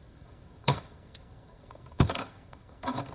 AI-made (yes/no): yes